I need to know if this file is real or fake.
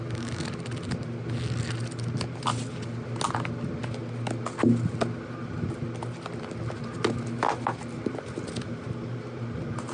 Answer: real